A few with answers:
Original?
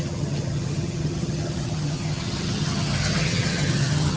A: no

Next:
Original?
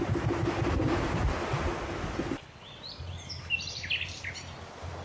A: yes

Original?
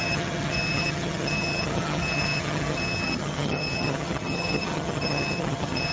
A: no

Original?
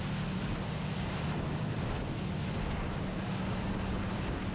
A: yes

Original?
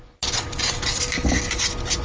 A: yes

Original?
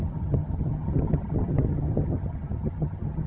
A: no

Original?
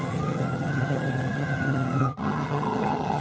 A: no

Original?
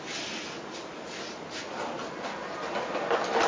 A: yes